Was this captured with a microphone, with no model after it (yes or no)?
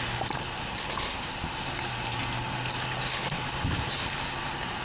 yes